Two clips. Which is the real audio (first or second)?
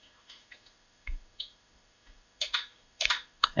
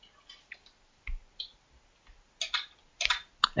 second